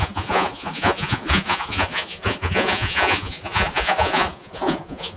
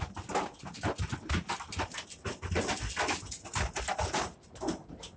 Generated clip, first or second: first